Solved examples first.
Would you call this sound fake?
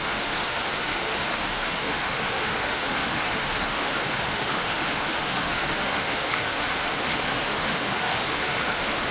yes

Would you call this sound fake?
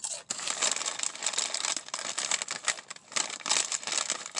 no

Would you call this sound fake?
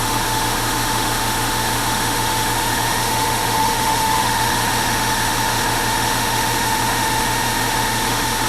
yes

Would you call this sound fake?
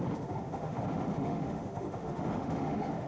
yes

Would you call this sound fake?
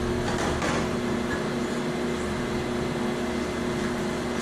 no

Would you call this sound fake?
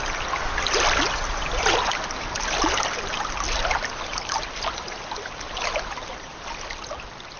no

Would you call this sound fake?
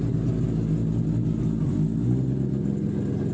no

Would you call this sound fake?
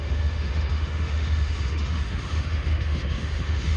yes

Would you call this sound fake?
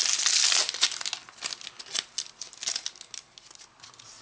no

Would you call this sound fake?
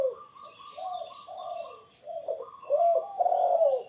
no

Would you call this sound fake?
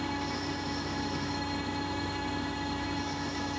yes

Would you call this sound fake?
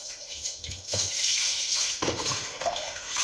yes